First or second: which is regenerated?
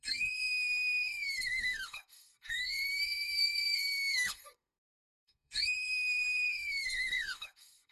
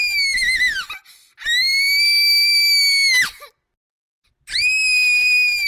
first